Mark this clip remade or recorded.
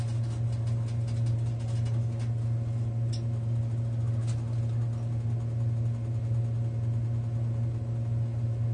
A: recorded